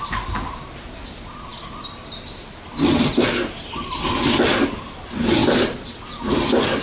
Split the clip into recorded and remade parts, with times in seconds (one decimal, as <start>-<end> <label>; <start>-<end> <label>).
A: 0.0-5.4 recorded; 5.4-6.3 remade; 6.3-6.8 recorded